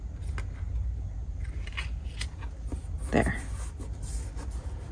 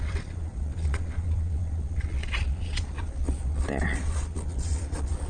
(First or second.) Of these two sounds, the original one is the first